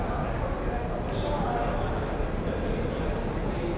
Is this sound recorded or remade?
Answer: recorded